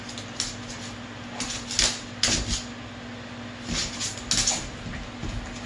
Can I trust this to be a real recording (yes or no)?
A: yes